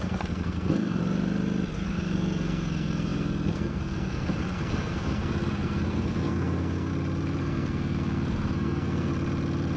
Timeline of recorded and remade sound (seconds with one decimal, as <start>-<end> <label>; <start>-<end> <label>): 0.0-1.0 remade; 1.0-1.7 recorded; 1.7-6.9 remade; 6.9-7.4 recorded; 7.4-9.1 remade; 9.1-9.8 recorded